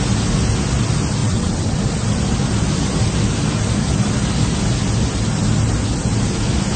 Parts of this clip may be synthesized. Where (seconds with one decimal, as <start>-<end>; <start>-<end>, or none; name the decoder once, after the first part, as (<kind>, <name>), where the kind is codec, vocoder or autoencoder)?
1.2-1.8 (vocoder, WaveNeXt)